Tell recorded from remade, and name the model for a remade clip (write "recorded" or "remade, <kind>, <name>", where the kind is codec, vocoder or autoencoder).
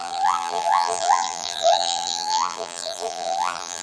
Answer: remade, vocoder, BigVGAN v2